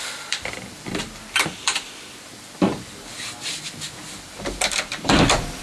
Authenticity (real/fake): fake